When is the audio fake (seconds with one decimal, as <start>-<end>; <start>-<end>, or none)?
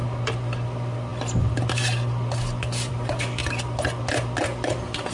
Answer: none